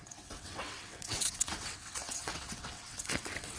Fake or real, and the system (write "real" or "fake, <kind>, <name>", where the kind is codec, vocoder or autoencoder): fake, vocoder, WaveNeXt